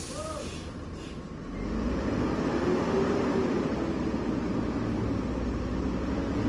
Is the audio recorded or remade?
recorded